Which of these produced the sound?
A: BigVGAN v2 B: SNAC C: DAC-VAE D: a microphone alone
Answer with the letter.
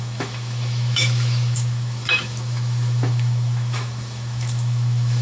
C